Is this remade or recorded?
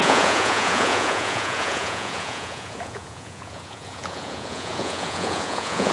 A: remade